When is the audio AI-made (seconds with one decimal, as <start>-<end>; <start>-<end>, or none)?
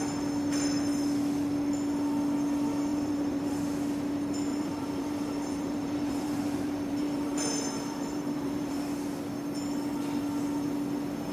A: 2.9-3.5; 4.5-8.9